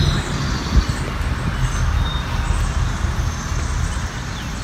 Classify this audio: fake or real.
real